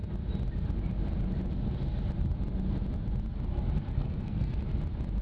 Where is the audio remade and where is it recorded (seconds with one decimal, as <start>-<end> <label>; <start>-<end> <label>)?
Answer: 0.0-3.9 recorded; 3.9-4.6 remade; 4.6-5.2 recorded